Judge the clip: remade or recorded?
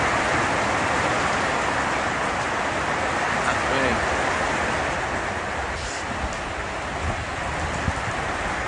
recorded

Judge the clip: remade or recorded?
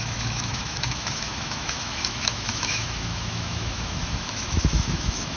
remade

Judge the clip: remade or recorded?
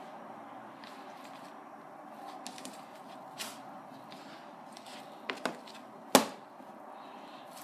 recorded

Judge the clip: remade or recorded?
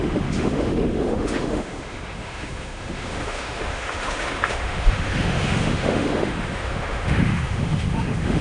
remade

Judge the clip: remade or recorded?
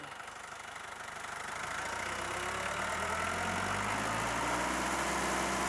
recorded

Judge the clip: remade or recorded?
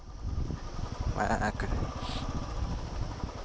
recorded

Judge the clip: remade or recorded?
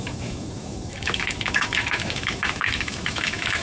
remade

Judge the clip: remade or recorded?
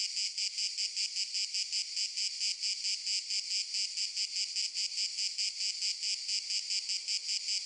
recorded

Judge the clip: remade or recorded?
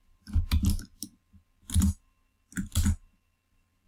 recorded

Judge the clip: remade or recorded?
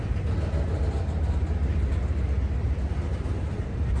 recorded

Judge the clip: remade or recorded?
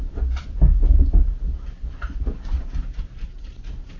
recorded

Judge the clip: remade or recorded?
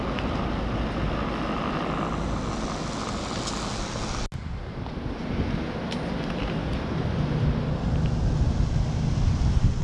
recorded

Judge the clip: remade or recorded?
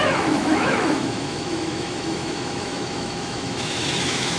remade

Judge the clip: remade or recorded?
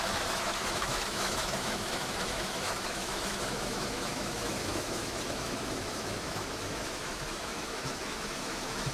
remade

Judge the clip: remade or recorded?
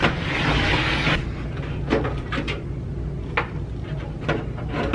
recorded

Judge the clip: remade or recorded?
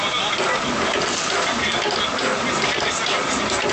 recorded